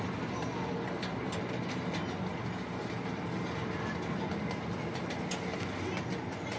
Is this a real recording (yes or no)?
yes